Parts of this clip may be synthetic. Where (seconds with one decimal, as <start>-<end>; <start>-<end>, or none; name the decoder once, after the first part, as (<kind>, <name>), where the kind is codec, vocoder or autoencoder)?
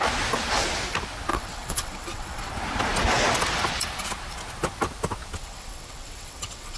1.3-2.5 (vocoder, WaveNeXt); 5.4-6.8